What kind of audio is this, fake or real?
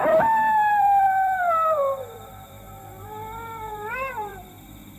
fake